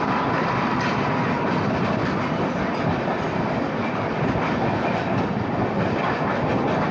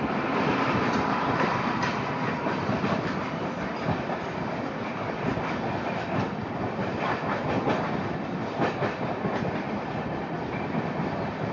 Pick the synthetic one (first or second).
second